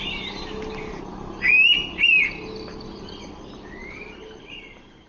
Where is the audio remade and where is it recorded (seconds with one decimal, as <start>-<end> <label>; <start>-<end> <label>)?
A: 0.0-5.1 recorded